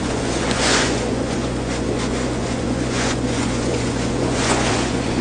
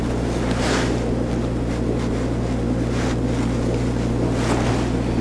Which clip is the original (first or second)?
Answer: second